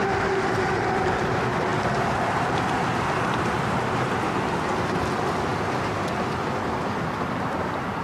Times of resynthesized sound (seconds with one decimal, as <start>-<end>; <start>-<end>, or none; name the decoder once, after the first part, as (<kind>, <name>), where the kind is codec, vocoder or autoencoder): 1.7-4.5 (vocoder, BigVGAN v2)